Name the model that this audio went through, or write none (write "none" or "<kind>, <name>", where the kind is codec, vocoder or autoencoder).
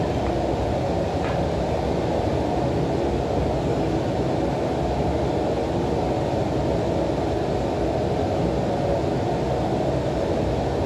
none